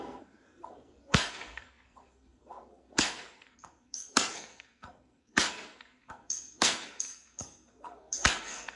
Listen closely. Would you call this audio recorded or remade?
remade